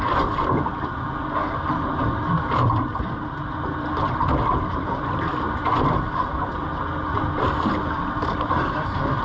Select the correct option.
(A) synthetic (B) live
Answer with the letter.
B